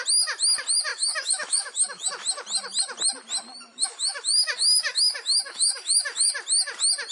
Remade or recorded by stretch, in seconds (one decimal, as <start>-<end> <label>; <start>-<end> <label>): 0.0-0.9 recorded; 0.9-2.1 remade; 2.1-3.7 recorded; 3.7-6.3 remade; 6.3-7.1 recorded